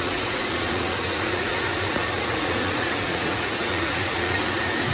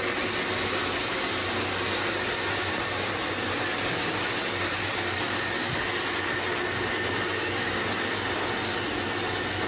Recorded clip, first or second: second